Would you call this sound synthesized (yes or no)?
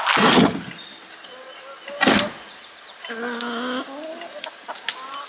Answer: no